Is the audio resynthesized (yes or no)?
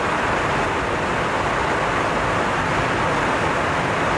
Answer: no